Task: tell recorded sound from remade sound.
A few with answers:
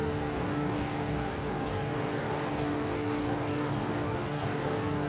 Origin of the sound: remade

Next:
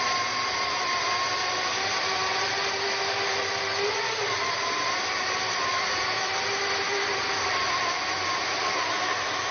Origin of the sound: recorded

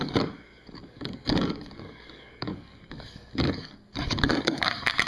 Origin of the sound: remade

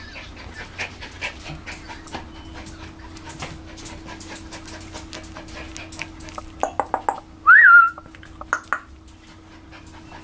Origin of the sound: recorded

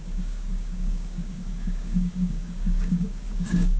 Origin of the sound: remade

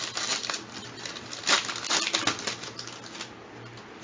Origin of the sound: recorded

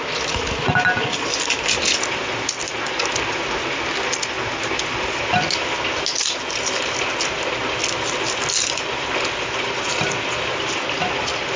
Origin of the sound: recorded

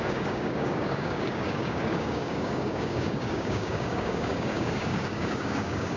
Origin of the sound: remade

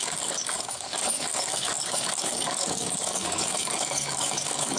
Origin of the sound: remade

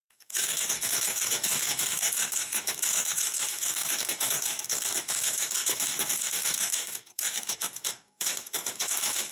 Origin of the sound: remade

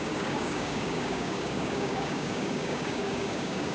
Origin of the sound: remade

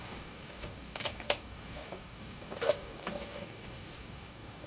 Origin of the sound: remade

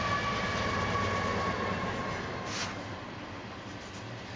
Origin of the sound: recorded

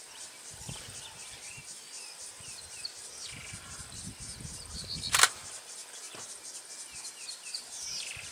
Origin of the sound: recorded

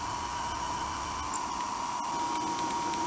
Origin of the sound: recorded